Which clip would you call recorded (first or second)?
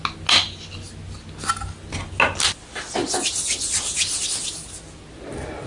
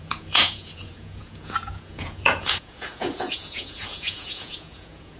first